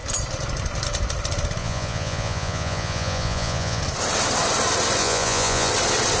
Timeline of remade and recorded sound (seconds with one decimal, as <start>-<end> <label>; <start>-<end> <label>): 0.0-1.6 recorded; 1.6-3.8 remade; 3.8-5.0 recorded; 5.0-5.7 remade; 5.7-6.2 recorded